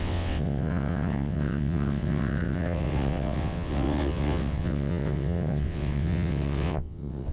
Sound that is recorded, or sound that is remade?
remade